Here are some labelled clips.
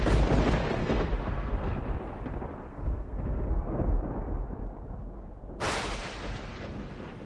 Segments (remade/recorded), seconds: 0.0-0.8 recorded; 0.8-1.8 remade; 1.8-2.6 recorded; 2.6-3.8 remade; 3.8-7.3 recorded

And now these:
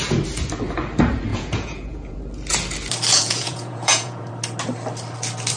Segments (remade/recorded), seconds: 0.0-1.3 recorded; 1.3-2.2 remade; 2.2-3.1 recorded; 3.1-4.3 remade; 4.3-5.6 recorded